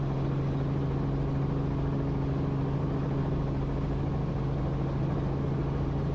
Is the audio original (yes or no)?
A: yes